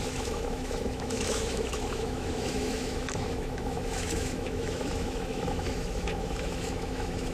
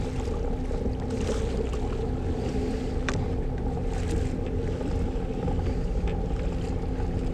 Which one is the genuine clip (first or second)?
second